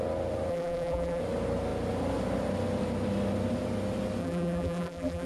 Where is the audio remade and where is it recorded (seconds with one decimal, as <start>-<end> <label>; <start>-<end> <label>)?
0.0-0.5 recorded; 0.5-1.2 remade; 1.2-4.2 recorded; 4.2-5.3 remade